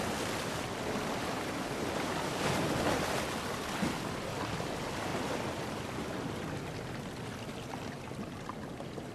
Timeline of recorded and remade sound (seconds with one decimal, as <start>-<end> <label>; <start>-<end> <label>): 0.0-9.1 recorded